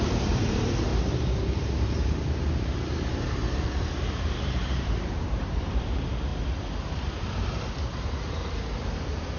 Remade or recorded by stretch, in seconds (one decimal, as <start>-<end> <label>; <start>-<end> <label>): 0.0-0.9 remade; 0.9-1.6 recorded; 1.6-6.3 remade; 6.3-7.5 recorded; 7.5-9.4 remade